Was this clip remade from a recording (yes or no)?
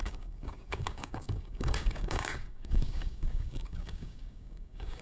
yes